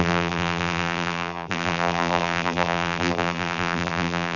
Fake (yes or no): yes